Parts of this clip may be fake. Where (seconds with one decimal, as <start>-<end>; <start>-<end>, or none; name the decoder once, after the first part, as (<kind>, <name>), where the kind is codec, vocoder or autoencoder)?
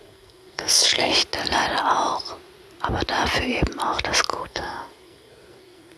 0.0-1.1 (codec, SNAC); 4.4-6.0